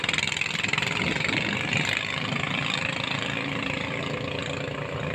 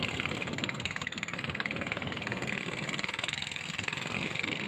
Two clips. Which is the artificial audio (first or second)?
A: second